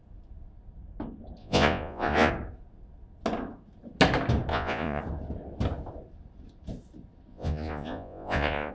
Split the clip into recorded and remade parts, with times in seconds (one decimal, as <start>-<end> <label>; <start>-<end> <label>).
0.0-1.4 recorded; 1.4-2.3 remade; 2.3-4.5 recorded; 4.5-5.0 remade; 5.0-7.3 recorded; 7.3-8.7 remade